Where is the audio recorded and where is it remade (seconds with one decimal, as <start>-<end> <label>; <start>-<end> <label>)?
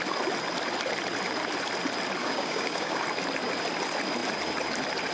0.0-2.2 recorded; 2.2-3.0 remade; 3.0-5.1 recorded